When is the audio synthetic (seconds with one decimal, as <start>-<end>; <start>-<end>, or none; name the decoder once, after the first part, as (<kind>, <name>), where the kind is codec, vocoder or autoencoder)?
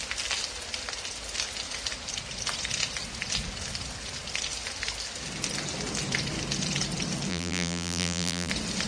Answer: 7.3-8.5 (vocoder, BigVGAN v2)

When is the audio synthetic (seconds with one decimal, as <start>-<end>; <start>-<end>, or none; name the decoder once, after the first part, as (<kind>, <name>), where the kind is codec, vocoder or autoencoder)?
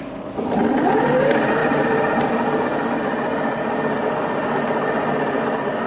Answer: 1.6-2.3 (vocoder, BigVGAN v2)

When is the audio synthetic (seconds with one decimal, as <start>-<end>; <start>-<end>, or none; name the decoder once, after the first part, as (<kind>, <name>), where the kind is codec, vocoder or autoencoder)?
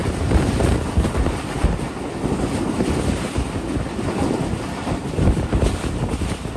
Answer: 0.0-1.5 (vocoder, BigVGAN v2)